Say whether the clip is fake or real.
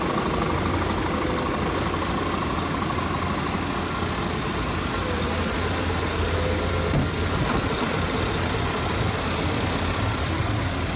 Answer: real